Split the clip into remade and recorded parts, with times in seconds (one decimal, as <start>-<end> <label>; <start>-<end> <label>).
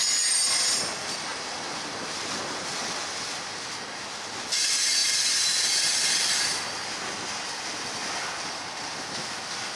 0.0-9.8 recorded